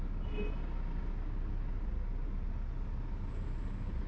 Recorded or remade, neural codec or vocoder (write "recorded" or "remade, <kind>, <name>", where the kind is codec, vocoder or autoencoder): recorded